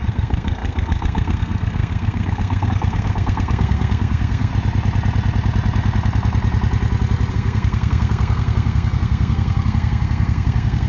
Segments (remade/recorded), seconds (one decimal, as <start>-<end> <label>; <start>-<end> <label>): 0.0-4.5 remade; 4.5-7.3 recorded; 7.3-10.9 remade